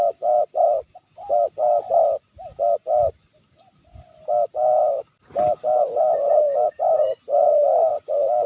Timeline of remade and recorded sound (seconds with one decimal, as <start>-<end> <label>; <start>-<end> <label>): 0.0-8.5 recorded